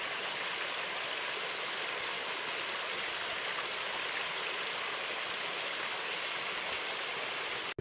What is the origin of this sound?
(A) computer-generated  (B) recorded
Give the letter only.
B